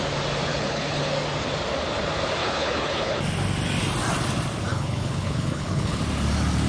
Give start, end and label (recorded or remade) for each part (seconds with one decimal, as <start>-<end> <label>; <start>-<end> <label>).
0.0-0.5 recorded; 0.5-1.1 remade; 1.1-2.4 recorded; 2.4-3.2 remade; 3.2-4.7 recorded; 4.7-6.0 remade; 6.0-6.7 recorded